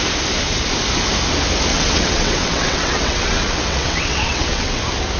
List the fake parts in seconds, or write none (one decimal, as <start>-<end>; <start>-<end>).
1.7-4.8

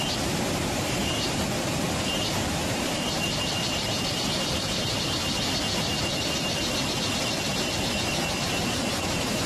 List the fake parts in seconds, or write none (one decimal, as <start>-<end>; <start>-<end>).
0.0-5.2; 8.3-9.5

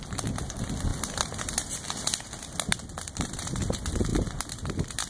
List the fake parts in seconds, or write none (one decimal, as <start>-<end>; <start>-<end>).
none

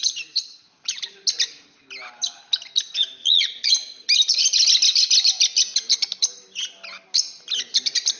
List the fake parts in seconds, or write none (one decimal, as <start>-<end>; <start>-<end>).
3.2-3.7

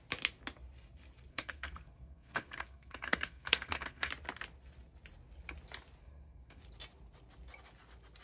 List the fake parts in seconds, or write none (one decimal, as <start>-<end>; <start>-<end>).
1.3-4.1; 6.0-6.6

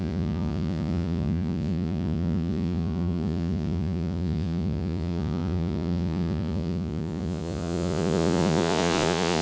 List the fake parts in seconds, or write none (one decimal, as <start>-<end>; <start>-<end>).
0.0-9.4